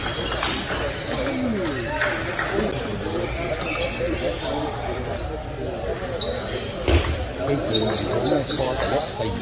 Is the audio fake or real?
real